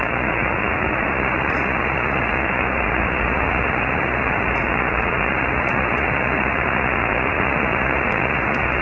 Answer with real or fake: fake